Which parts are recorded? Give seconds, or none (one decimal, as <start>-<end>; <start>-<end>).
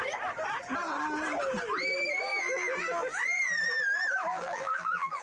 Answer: 0.0-2.3; 3.2-4.3